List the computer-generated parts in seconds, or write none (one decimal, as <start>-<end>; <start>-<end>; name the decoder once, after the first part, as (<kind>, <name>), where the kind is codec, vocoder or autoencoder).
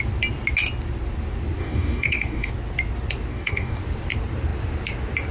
1.6-2.5 (codec, DAC); 3.3-3.8